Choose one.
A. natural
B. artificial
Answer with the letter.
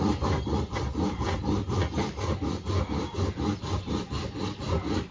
A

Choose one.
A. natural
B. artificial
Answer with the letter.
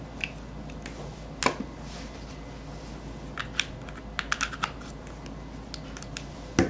A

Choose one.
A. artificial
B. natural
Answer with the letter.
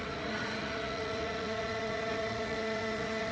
A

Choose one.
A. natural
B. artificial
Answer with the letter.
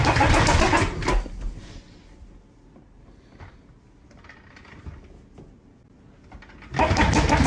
A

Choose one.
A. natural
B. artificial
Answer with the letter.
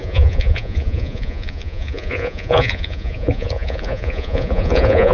B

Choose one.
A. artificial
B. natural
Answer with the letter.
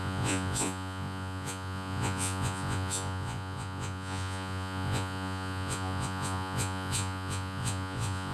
A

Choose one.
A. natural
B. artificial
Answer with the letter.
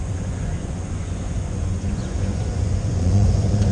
B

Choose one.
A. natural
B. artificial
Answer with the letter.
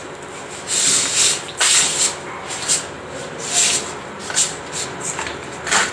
A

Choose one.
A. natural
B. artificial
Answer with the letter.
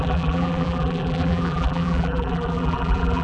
B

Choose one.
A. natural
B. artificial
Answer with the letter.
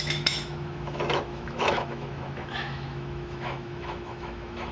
B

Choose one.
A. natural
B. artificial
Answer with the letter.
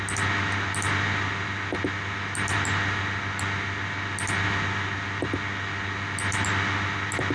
A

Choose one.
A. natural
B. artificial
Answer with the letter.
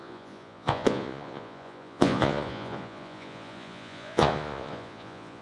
B